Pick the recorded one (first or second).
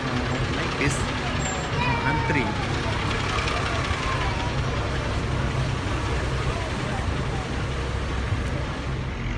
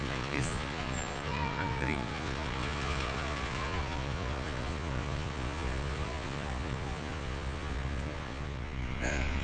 first